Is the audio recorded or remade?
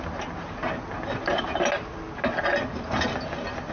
recorded